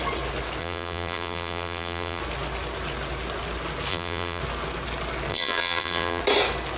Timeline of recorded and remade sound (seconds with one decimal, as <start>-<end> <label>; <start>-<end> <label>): 0.0-0.6 recorded; 0.6-2.2 remade; 2.2-3.9 recorded; 3.9-4.4 remade; 4.4-5.3 recorded; 5.3-6.2 remade; 6.2-6.8 recorded